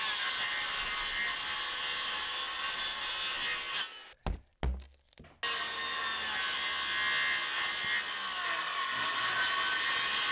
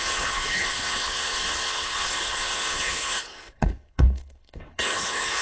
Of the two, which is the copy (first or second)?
second